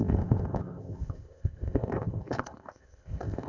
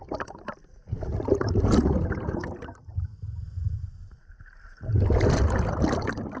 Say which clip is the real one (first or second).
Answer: second